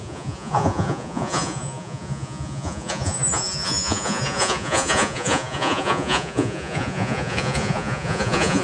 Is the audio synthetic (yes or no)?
yes